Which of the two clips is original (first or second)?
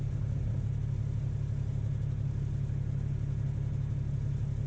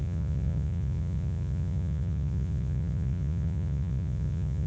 first